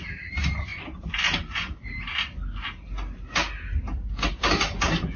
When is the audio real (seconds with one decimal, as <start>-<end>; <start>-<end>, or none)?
0.0-5.2